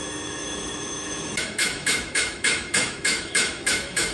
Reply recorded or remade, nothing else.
remade